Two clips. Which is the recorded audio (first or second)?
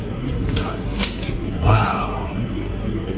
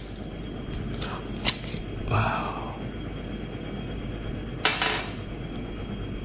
second